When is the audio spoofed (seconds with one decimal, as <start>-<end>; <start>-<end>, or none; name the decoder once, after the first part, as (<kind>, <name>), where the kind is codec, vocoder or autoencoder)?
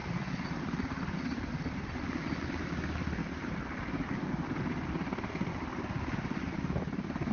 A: none